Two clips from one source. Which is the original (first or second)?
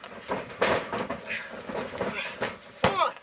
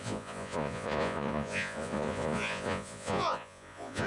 first